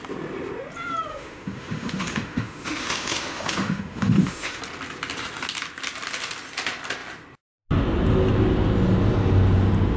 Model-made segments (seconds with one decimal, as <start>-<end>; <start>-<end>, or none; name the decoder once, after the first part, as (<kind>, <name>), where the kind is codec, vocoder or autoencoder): 1.1-4.6 (autoencoder, DAC-VAE)